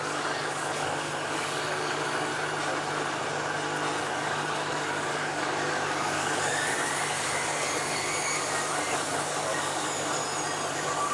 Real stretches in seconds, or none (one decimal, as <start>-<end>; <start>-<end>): 2.3-4.0; 10.2-10.7